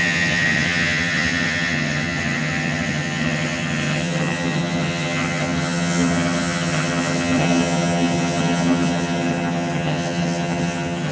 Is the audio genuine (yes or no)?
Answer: no